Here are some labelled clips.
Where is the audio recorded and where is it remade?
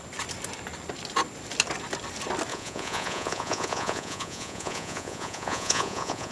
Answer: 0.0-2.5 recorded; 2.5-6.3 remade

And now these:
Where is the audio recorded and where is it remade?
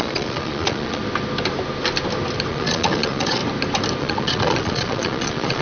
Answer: 0.0-1.0 remade; 1.0-2.5 recorded; 2.5-3.4 remade; 3.4-4.0 recorded; 4.0-5.6 remade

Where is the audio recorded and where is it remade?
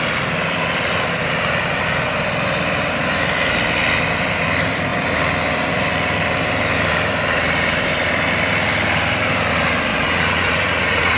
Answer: 0.0-9.9 recorded; 9.9-11.2 remade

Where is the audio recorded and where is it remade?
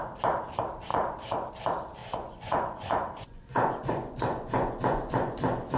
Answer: 0.0-0.9 recorded; 0.9-1.5 remade; 1.5-2.0 recorded; 2.0-5.8 remade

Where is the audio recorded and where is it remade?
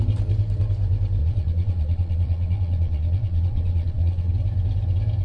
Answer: 0.0-1.2 recorded; 1.2-4.3 remade; 4.3-5.2 recorded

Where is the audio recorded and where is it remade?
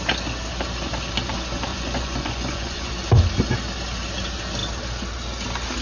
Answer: 0.0-1.7 recorded; 1.7-2.9 remade; 2.9-5.8 recorded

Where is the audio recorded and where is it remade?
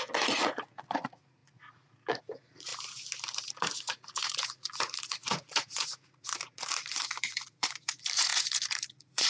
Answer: 0.0-2.7 remade; 2.7-3.6 recorded; 3.6-9.3 remade